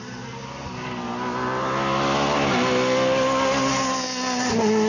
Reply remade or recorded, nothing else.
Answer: recorded